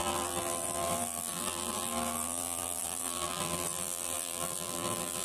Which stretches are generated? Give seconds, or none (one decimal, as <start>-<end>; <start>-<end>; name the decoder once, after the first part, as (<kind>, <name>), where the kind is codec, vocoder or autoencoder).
0.0-5.2 (vocoder, BigVGAN v2)